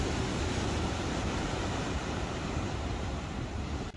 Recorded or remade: remade